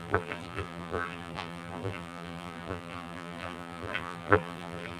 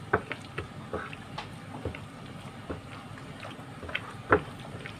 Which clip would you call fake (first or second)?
first